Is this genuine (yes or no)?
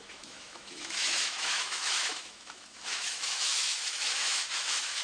no